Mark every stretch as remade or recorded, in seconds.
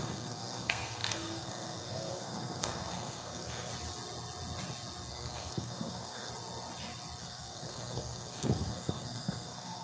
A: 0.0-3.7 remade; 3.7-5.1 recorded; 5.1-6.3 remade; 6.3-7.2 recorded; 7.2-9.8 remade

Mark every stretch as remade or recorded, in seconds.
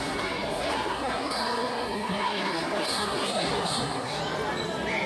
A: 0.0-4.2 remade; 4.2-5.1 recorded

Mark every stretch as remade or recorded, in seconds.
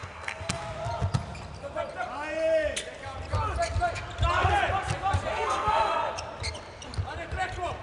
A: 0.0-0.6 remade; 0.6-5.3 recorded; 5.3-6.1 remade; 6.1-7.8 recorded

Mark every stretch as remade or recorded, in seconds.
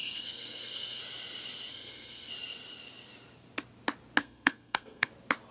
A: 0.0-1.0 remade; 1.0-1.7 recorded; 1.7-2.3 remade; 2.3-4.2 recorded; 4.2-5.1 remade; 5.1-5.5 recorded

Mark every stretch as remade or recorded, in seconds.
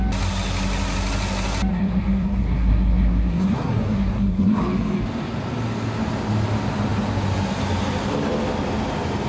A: 0.0-1.7 recorded; 1.7-4.6 remade; 4.6-9.3 recorded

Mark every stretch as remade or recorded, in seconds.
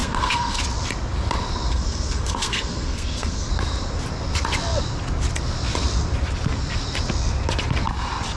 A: 0.0-0.6 remade; 0.6-1.7 recorded; 1.7-3.5 remade; 3.5-8.4 recorded